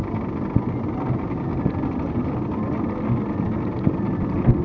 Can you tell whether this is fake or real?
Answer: real